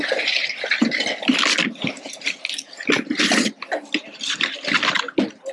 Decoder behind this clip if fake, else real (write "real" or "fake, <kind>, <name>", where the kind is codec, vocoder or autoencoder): real